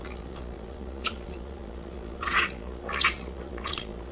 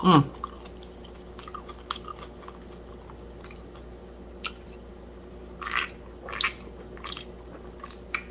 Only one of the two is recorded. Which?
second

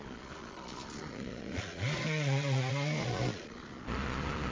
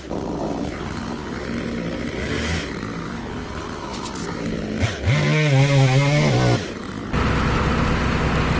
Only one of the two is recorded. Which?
second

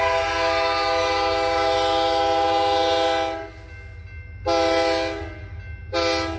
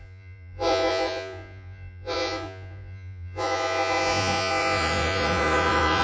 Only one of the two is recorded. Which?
first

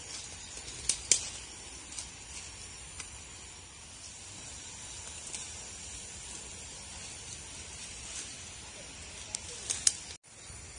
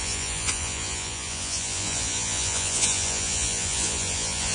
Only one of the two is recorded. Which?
first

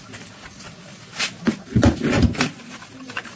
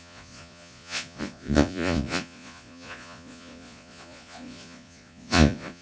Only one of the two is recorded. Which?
first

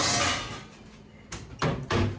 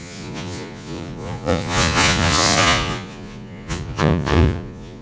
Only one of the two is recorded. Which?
first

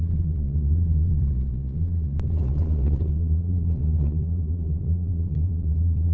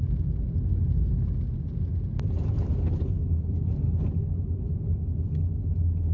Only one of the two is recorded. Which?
second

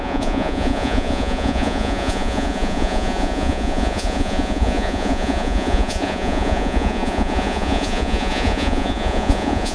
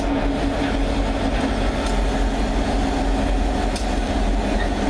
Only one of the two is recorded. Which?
second